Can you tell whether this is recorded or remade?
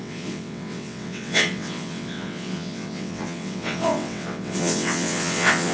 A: remade